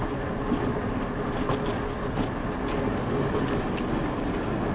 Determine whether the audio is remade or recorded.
recorded